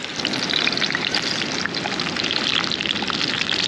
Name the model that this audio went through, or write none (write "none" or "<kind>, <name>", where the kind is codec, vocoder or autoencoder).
none